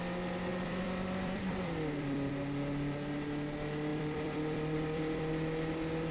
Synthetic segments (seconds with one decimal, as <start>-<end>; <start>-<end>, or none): 0.5-2.3; 3.9-5.3